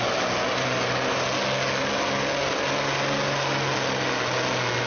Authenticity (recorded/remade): recorded